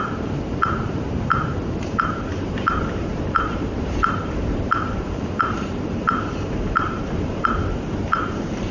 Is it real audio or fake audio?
fake